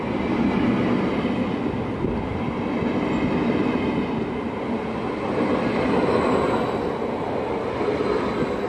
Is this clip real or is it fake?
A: real